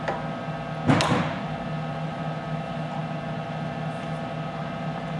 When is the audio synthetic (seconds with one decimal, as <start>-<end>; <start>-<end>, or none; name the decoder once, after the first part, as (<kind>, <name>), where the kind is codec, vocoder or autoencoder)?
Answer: none